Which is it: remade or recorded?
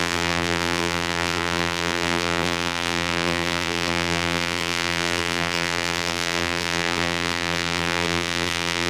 remade